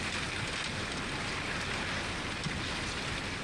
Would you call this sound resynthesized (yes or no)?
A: no